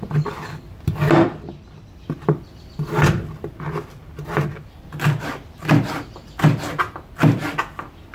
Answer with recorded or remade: recorded